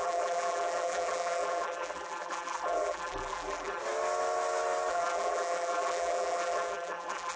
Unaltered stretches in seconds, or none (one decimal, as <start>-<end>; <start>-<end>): 3.8-4.9